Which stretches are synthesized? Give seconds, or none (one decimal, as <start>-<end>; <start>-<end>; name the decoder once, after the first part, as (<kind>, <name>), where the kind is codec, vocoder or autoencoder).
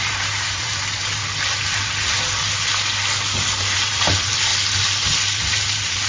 0.0-1.2 (vocoder, BigVGAN v2); 3.6-4.5; 5.4-6.1